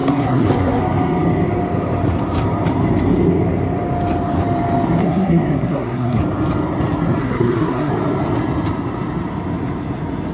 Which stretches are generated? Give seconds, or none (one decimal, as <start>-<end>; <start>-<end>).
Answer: 0.0-0.8; 5.0-6.2; 7.2-7.9